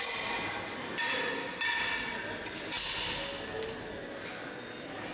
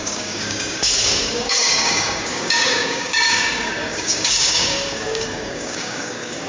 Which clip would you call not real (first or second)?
second